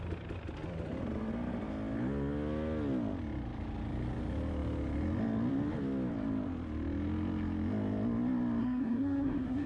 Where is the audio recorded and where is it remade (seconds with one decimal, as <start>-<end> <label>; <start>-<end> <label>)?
0.0-8.6 recorded; 8.6-9.7 remade